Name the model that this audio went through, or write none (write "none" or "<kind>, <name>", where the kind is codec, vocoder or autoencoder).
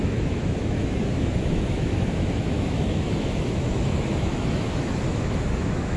autoencoder, DAC-VAE